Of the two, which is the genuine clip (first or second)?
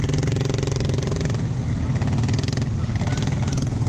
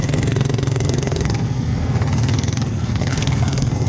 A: first